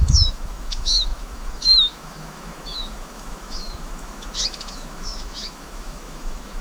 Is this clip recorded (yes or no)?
no